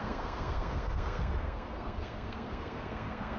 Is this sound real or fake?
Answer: fake